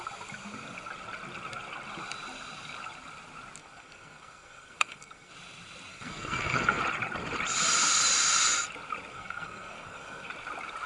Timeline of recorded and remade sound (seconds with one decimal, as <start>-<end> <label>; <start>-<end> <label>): 0.0-3.6 recorded; 3.6-5.3 remade; 5.3-5.9 recorded; 5.9-6.8 remade; 6.8-9.1 recorded; 9.1-10.3 remade; 10.3-10.9 recorded